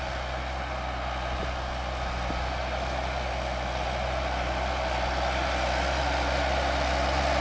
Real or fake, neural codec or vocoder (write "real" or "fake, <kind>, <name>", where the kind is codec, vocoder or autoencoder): real